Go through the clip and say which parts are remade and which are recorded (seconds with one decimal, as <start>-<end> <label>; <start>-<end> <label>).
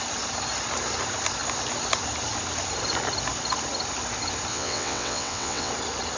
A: 0.0-4.5 recorded; 4.5-5.7 remade; 5.7-6.2 recorded